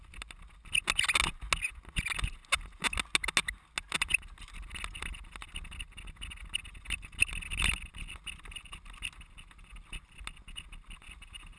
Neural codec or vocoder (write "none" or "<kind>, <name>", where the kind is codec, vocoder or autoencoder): none